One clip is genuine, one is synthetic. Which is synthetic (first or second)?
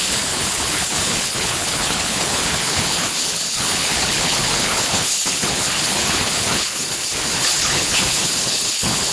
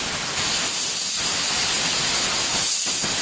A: first